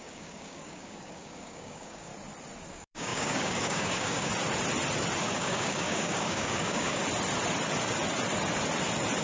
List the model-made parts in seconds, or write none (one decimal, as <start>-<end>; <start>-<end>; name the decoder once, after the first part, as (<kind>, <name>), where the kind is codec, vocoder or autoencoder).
0.0-2.1 (codec, DAC); 2.7-4.3; 5.2-7.0